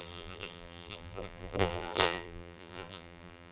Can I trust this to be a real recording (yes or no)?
no